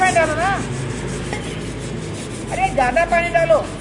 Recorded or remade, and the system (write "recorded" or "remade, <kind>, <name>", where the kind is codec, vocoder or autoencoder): recorded